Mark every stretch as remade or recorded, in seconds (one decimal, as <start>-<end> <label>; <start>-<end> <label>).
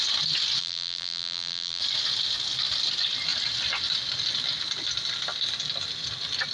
0.0-0.6 recorded; 0.6-1.8 remade; 1.8-6.5 recorded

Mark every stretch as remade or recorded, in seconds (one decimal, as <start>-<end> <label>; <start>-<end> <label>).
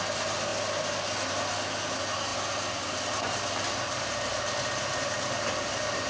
0.0-0.5 recorded; 0.5-1.3 remade; 1.3-2.3 recorded; 2.3-6.1 remade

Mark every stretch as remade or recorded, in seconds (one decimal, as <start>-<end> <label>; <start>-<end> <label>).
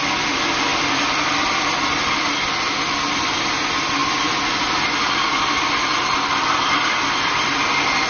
0.0-0.7 recorded; 0.7-1.4 remade; 1.4-8.1 recorded